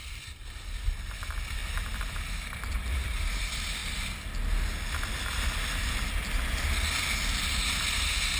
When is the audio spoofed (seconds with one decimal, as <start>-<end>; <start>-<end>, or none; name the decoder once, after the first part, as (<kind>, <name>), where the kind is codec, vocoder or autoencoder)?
0.0-3.8 (vocoder, BigVGAN v2); 7.4-8.4